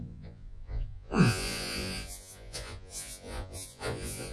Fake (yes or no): yes